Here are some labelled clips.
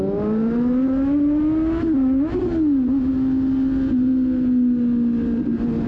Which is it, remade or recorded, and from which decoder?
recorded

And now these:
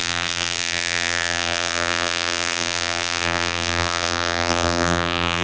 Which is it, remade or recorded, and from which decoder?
remade, vocoder, BigVGAN v2